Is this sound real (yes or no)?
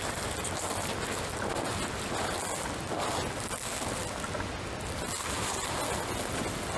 yes